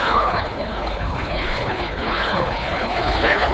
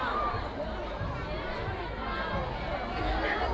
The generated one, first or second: first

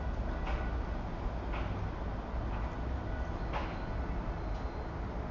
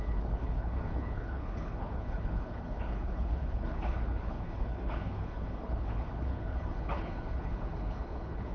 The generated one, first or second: second